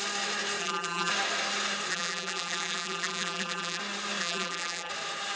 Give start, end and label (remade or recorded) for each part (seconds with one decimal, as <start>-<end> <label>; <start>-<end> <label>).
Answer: 0.0-0.6 recorded; 0.6-1.1 remade; 1.1-1.9 recorded; 1.9-3.8 remade; 3.8-4.2 recorded; 4.2-4.9 remade; 4.9-5.4 recorded